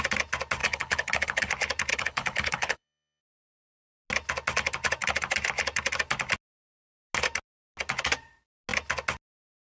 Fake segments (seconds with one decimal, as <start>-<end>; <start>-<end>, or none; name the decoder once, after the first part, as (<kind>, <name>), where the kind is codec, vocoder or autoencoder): 0.6-1.5 (codec, HILCodec); 1.9-3.2